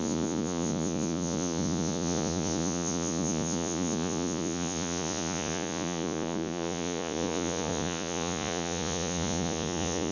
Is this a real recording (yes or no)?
no